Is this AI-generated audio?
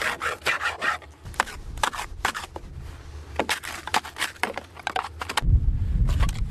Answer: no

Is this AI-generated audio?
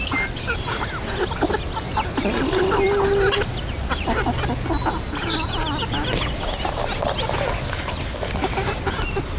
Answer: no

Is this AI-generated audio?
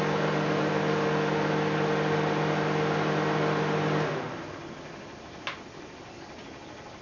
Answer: no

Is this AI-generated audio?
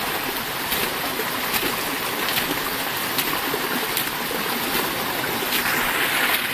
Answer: no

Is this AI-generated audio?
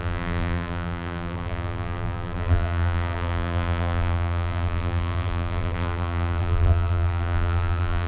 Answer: yes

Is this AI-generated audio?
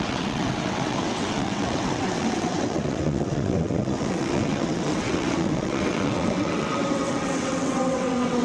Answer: yes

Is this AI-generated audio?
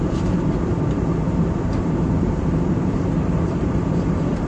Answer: yes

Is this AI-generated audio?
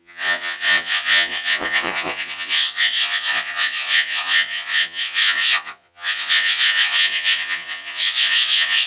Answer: yes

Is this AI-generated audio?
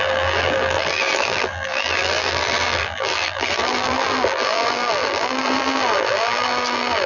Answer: yes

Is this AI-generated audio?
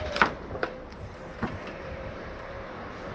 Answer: yes